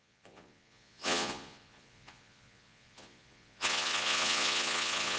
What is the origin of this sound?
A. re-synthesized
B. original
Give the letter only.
A